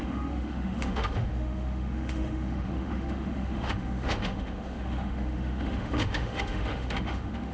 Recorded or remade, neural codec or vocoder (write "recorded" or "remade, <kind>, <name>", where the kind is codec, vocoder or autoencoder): remade, autoencoder, DAC-VAE